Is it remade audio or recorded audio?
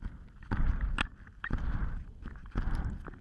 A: recorded